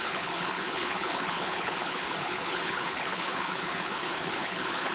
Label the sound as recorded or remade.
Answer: remade